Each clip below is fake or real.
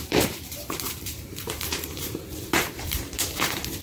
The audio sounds fake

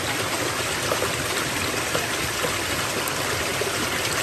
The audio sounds real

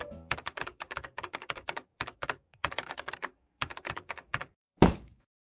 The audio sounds fake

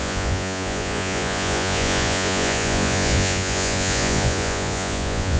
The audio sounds fake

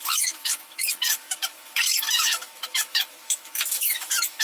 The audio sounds fake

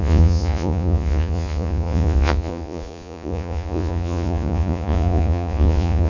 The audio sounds fake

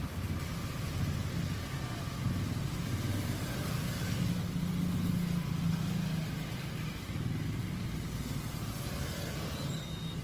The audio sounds real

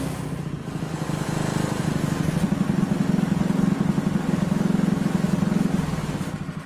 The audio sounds real